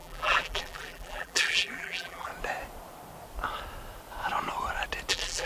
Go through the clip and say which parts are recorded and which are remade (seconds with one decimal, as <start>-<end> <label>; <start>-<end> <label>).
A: 0.0-2.3 remade; 2.3-5.1 recorded; 5.1-5.5 remade